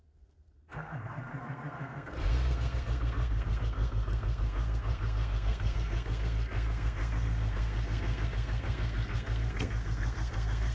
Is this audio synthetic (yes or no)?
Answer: yes